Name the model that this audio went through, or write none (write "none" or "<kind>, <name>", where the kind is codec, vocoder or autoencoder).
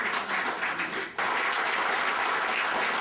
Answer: none